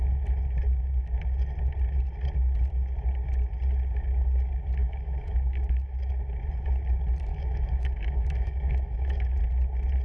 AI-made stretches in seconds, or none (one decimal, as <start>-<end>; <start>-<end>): 4.8-6.1; 7.3-9.4